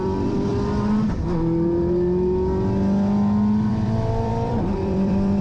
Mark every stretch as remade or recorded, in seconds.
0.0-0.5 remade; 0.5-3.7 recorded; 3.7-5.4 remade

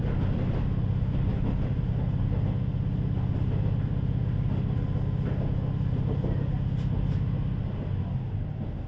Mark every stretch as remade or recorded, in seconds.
0.0-1.3 recorded; 1.3-2.2 remade; 2.2-8.9 recorded

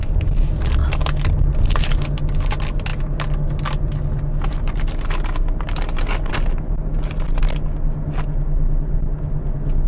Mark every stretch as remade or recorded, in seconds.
0.0-9.9 recorded

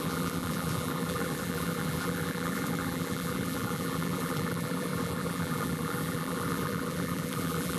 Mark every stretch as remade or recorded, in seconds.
0.0-7.8 remade

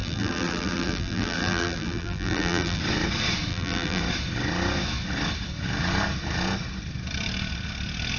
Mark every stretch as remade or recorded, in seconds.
0.0-2.8 remade; 2.8-3.5 recorded; 3.5-4.0 remade; 4.0-8.2 recorded